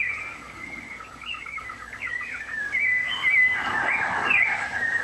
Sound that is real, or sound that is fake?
fake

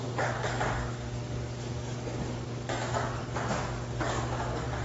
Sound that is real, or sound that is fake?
fake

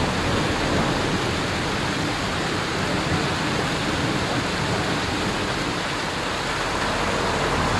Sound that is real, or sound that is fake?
real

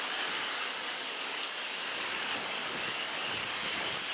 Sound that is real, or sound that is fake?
fake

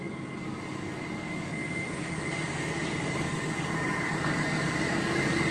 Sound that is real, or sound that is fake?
fake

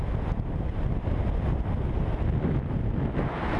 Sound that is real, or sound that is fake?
real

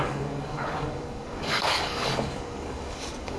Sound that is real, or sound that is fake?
fake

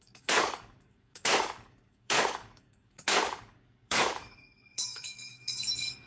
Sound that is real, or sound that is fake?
fake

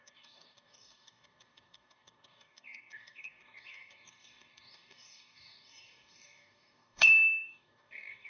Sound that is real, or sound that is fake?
fake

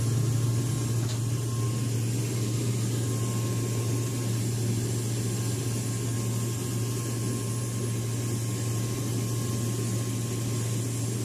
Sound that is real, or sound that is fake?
real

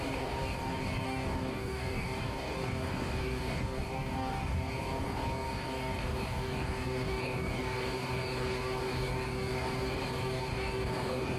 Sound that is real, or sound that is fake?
fake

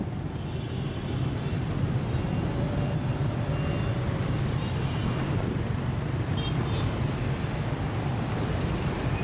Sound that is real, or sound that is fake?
real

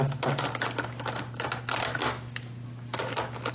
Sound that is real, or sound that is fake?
real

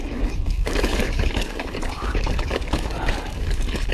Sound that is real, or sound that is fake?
fake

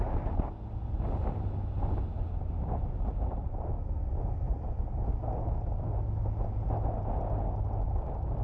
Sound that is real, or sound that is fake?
real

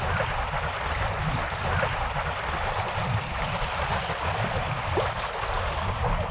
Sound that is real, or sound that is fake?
real